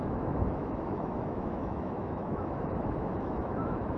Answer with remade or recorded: remade